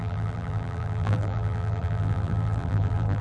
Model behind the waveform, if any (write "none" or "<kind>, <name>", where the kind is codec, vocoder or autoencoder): vocoder, BigVGAN v2